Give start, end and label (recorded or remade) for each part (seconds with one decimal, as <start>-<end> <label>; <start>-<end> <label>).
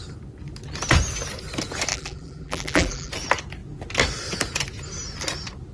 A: 0.0-1.9 recorded; 1.9-3.1 remade; 3.1-5.7 recorded